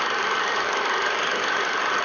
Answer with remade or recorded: remade